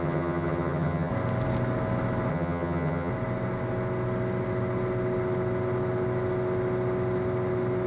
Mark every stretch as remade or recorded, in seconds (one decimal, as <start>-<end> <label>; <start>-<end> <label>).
0.0-1.1 remade; 1.1-2.3 recorded; 2.3-3.1 remade; 3.1-7.9 recorded